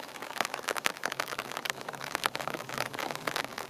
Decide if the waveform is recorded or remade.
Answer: remade